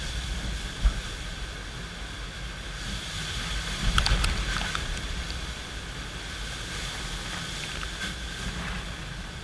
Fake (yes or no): no